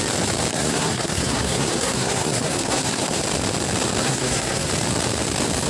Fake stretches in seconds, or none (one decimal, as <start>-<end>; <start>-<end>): 0.5-3.2; 4.0-4.7